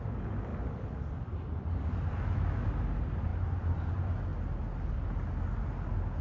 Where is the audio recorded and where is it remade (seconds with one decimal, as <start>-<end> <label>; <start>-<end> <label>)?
0.0-0.5 recorded; 0.5-1.7 remade; 1.7-6.2 recorded